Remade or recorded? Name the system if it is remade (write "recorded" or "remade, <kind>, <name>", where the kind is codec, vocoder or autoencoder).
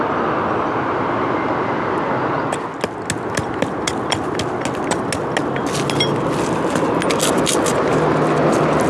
recorded